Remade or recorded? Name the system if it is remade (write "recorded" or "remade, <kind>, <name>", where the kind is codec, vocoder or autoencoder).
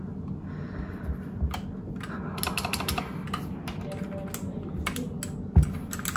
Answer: recorded